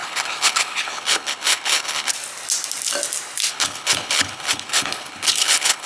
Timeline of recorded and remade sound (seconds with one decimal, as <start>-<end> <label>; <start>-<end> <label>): 0.0-2.1 remade; 2.1-3.5 recorded; 3.5-5.9 remade

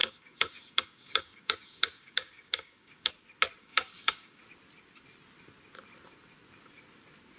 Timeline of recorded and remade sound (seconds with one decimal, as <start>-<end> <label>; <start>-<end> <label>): 0.0-3.1 remade; 3.1-3.6 recorded; 3.6-4.4 remade; 4.4-7.4 recorded

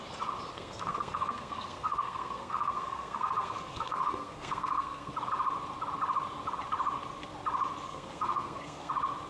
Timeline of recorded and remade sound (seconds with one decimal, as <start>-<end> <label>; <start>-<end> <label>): 0.0-0.5 recorded; 0.5-5.1 remade; 5.1-7.9 recorded; 7.9-8.9 remade; 8.9-9.3 recorded

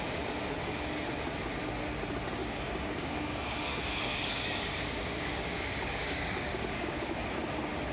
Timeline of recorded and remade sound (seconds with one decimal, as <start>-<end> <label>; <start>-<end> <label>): 0.0-2.4 recorded; 2.4-7.1 remade; 7.1-7.9 recorded